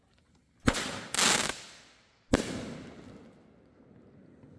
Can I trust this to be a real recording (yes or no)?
yes